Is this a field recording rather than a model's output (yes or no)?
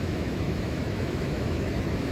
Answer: no